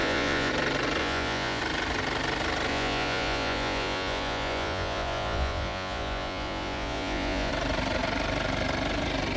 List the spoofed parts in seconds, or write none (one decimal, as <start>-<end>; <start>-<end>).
0.0-0.5; 1.0-1.6; 2.7-7.5